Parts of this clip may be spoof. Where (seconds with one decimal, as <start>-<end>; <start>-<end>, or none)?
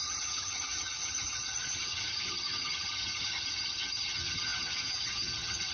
0.0-5.7